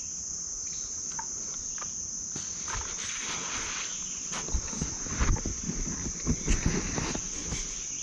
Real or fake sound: real